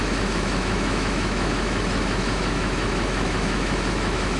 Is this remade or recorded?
remade